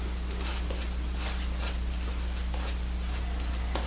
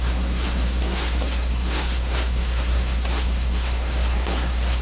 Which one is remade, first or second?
second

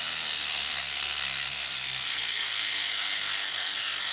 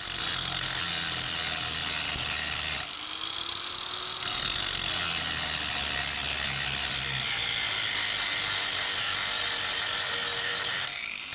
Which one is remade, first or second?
first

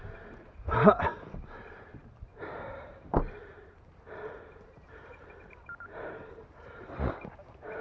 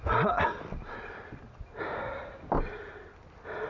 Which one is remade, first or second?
first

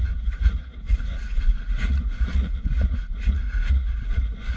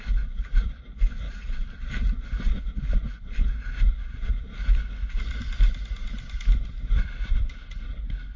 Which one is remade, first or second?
first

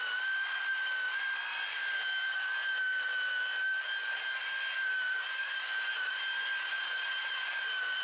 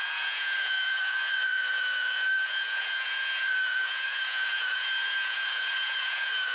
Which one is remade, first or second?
second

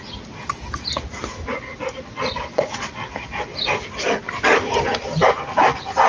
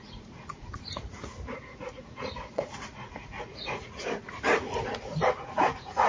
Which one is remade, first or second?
second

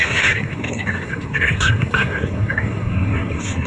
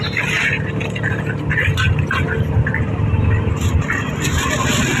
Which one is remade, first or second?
first